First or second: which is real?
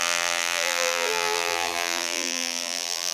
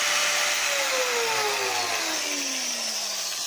second